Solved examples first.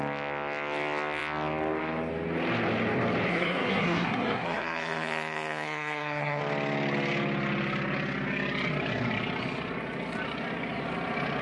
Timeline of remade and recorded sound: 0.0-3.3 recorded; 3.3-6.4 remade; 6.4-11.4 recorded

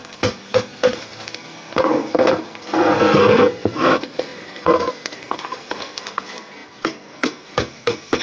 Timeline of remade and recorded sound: 0.0-8.2 remade